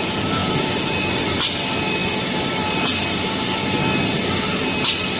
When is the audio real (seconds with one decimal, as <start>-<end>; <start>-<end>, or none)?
0.0-5.2